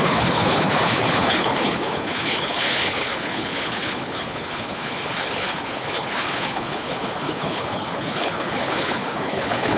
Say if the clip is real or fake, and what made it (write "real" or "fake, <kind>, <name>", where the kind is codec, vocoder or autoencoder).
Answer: fake, codec, HILCodec